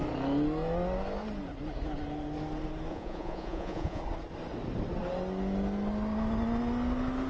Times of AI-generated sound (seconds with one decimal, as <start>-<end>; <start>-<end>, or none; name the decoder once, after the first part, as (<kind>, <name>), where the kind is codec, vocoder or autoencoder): 2.9-4.0 (vocoder, Vocos)

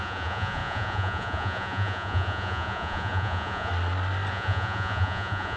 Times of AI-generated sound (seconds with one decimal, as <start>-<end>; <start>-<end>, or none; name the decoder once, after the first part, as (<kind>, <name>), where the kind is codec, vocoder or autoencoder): 0.0-3.7 (vocoder, Vocos); 4.3-5.6

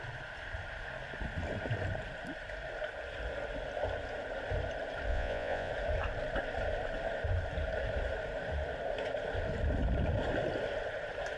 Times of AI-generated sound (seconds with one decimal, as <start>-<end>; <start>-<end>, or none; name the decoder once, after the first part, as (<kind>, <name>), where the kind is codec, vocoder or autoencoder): 5.1-5.7 (vocoder, Vocos)

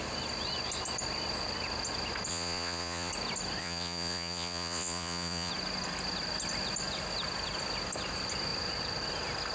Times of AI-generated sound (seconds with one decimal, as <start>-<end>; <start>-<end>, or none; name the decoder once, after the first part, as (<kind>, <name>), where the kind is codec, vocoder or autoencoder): 2.3-3.1 (vocoder, Vocos); 3.6-5.5

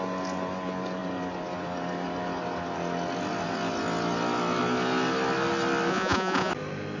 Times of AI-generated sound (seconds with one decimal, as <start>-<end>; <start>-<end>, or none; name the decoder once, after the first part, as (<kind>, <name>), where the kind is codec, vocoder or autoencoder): 5.9-6.5 (vocoder, Vocos)

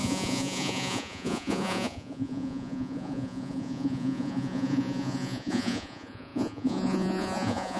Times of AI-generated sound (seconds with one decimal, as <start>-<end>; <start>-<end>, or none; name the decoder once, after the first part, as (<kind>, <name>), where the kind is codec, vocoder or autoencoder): 0.0-7.8 (vocoder, Vocos)

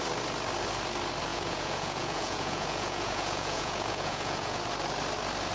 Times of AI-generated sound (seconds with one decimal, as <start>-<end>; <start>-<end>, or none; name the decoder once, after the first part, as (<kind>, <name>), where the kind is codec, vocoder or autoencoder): 1.3-4.6 (vocoder, Vocos)